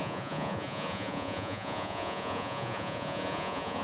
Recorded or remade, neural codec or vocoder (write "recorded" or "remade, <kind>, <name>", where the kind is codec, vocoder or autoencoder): remade, vocoder, Vocos